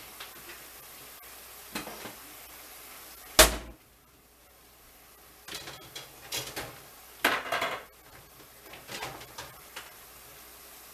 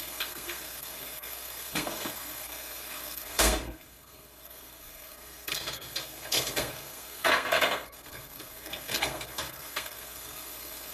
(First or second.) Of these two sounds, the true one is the first